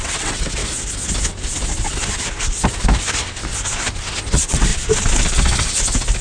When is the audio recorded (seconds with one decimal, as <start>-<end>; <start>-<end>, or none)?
0.6-4.3; 4.7-6.2